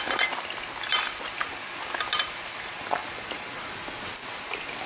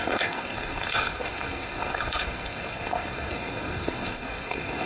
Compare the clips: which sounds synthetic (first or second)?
second